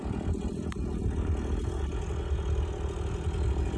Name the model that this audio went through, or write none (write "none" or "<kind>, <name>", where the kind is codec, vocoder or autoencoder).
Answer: none